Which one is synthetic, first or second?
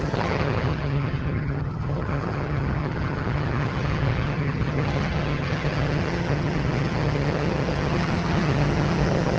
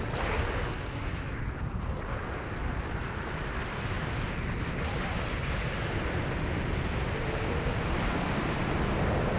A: first